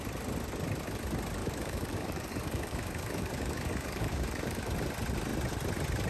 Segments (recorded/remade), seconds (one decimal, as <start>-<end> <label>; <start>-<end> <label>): 0.0-1.4 recorded; 1.4-4.7 remade; 4.7-6.1 recorded